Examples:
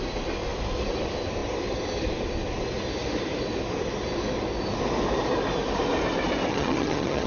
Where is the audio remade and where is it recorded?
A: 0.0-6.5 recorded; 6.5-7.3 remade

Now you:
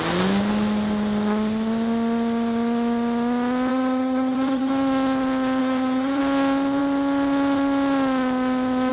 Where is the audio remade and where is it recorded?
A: 0.0-3.7 recorded; 3.7-4.7 remade; 4.7-5.6 recorded; 5.6-6.2 remade; 6.2-8.9 recorded

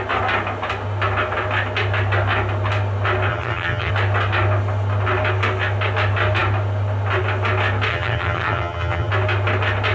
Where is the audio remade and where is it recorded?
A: 0.0-3.3 recorded; 3.3-3.9 remade; 3.9-7.9 recorded; 7.9-9.1 remade; 9.1-9.9 recorded